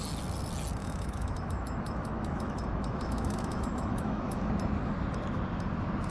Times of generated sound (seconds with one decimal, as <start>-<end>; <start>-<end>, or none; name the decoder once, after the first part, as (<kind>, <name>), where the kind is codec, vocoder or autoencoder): 0.8-4.5 (autoencoder, DAC-VAE)